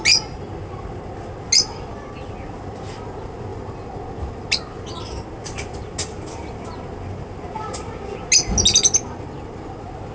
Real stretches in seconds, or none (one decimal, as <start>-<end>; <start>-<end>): 0.0-10.1